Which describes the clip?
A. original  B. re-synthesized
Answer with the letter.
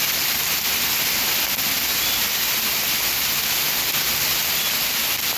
A